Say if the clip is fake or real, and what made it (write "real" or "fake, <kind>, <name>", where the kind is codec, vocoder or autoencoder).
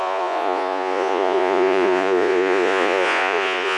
fake, vocoder, Vocos